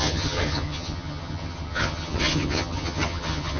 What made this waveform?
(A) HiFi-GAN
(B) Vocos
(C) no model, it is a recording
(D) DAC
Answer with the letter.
A